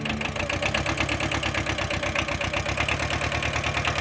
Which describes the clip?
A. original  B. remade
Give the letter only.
A